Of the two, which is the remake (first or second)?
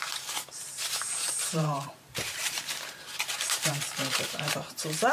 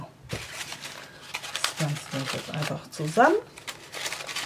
first